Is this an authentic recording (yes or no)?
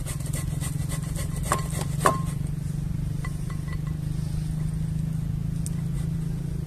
yes